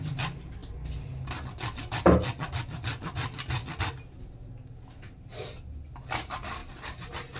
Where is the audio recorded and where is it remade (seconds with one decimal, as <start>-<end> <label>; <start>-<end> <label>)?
0.0-7.4 recorded